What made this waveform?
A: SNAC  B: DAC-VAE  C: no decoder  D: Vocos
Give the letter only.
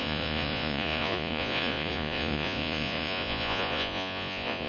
D